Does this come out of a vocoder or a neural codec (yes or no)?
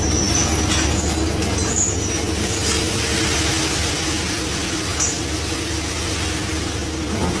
no